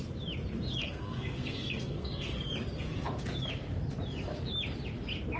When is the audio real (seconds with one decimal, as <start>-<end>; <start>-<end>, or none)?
0.0-0.8; 2.5-5.4